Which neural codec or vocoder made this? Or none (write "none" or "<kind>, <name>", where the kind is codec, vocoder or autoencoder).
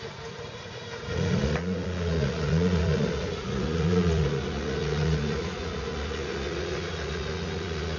vocoder, Vocos